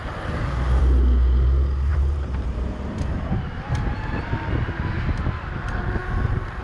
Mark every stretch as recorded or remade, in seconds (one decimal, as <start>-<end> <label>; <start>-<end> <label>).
0.0-1.9 recorded; 1.9-3.5 remade; 3.5-6.6 recorded